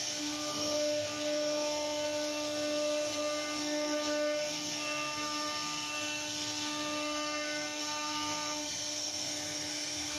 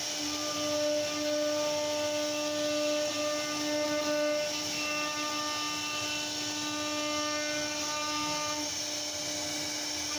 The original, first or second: second